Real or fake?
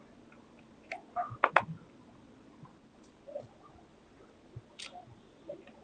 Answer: real